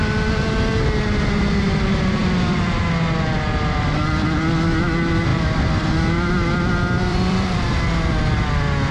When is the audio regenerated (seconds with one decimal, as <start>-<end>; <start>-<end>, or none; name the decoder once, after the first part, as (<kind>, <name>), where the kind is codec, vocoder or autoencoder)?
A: 2.2-2.8 (vocoder, BigVGAN v2); 7.1-7.6